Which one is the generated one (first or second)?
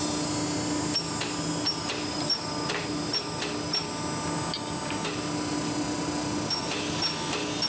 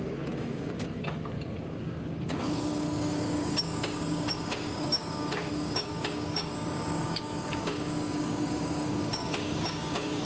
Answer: second